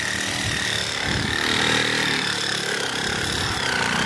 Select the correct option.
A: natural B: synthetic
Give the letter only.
A